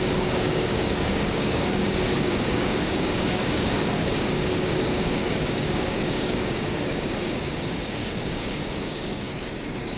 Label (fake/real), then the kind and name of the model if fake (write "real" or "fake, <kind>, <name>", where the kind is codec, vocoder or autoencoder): fake, codec, DAC